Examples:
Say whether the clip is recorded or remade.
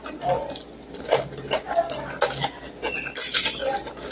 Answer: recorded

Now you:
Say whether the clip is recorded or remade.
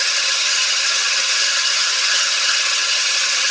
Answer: remade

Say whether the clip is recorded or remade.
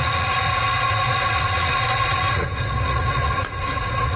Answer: remade